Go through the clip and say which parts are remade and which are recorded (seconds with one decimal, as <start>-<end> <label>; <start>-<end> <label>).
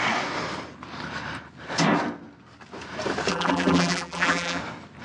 0.0-3.3 recorded; 3.3-4.6 remade; 4.6-5.0 recorded